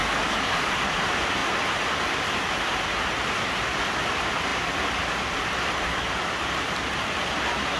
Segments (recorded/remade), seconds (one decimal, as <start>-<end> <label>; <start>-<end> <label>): 0.0-0.7 remade; 0.7-7.8 recorded

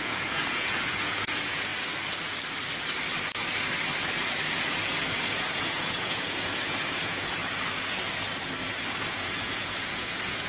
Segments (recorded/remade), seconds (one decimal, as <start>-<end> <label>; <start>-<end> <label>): 0.0-1.7 remade; 1.7-5.3 recorded; 5.3-7.4 remade; 7.4-9.1 recorded; 9.1-10.5 remade

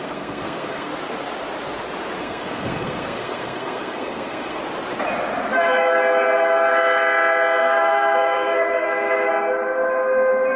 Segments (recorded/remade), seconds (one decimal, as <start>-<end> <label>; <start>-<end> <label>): 0.0-0.9 remade; 0.9-2.2 recorded; 2.2-4.6 remade; 4.6-7.6 recorded; 7.6-9.3 remade; 9.3-10.6 recorded